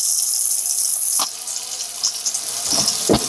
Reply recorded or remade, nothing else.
recorded